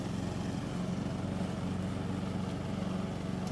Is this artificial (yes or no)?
no